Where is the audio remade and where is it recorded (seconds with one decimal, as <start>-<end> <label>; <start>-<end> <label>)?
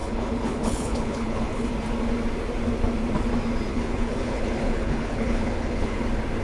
0.0-1.7 remade; 1.7-3.7 recorded; 3.7-6.0 remade; 6.0-6.4 recorded